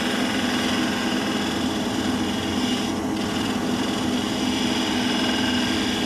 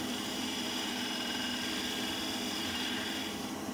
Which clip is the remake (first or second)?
second